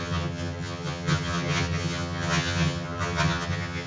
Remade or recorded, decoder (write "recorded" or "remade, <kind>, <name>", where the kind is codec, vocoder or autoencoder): remade, vocoder, HiFi-GAN